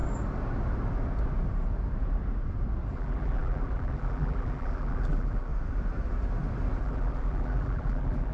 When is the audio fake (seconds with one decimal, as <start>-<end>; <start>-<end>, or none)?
2.9-5.5; 6.8-8.3

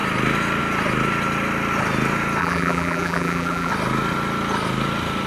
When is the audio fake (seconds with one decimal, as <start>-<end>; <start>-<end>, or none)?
2.4-3.7

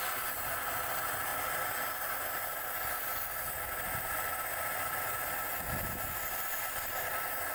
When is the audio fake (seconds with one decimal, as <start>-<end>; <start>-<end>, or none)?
none

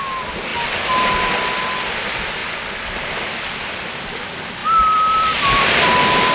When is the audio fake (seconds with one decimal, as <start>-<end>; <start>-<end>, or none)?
4.6-6.3

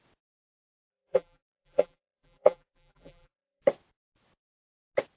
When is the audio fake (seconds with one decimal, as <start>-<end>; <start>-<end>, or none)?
0.9-3.6

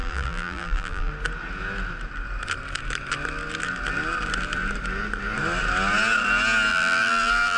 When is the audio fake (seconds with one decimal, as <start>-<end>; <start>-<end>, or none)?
0.0-1.1; 6.7-7.6